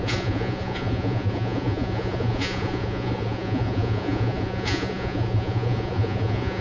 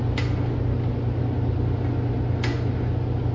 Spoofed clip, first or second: first